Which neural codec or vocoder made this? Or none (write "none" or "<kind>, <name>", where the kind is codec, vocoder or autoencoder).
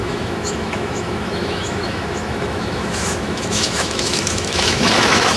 autoencoder, DAC-VAE